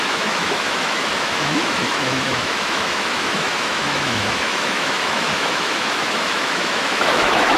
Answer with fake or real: fake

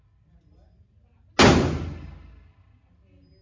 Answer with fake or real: real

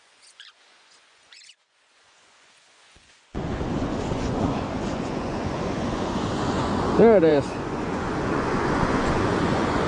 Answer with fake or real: fake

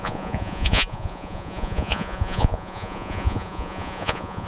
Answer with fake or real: fake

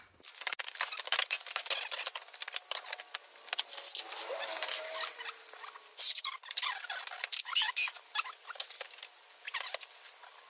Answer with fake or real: real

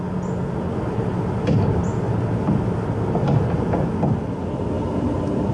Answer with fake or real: real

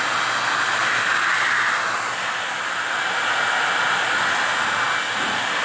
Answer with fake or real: real